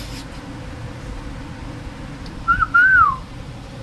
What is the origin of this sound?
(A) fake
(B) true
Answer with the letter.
B